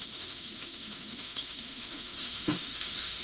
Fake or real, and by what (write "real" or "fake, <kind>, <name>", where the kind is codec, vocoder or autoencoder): fake, autoencoder, DAC-VAE